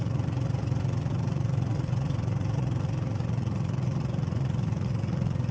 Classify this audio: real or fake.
fake